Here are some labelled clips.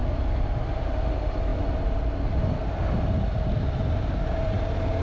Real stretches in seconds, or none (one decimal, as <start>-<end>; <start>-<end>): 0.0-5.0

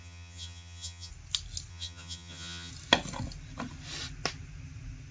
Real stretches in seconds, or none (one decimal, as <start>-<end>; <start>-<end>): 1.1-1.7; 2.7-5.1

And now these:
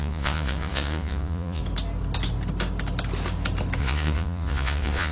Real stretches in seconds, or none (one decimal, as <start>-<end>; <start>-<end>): 1.6-3.8